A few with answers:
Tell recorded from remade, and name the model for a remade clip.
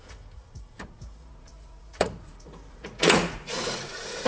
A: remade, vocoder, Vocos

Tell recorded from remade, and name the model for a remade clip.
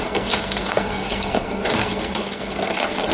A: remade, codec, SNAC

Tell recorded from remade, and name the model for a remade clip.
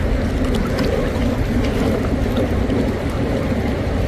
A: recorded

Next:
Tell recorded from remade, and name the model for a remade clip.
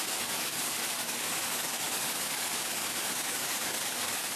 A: remade, codec, DAC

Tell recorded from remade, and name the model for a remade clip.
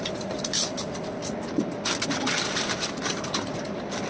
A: recorded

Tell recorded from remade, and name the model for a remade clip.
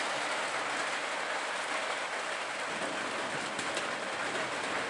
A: recorded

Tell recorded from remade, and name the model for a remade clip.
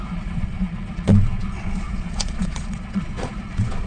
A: remade, vocoder, Vocos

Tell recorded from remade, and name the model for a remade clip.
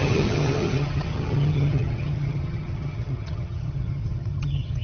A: remade, vocoder, HiFi-GAN